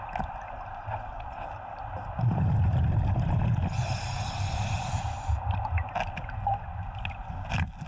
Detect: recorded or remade recorded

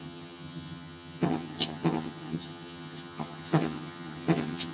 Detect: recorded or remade remade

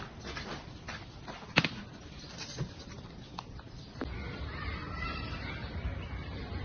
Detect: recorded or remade recorded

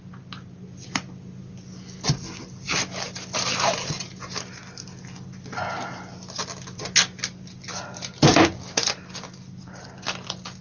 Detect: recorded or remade recorded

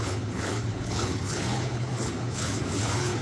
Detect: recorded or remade remade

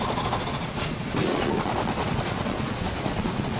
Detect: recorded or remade remade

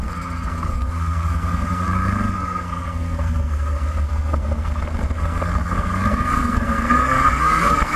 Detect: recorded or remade remade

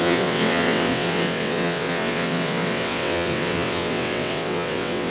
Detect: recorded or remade remade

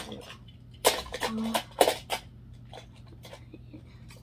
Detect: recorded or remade recorded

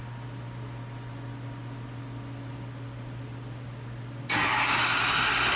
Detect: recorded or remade recorded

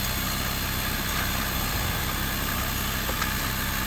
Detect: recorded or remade recorded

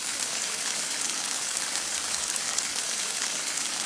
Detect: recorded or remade remade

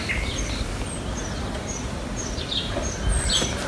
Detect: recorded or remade recorded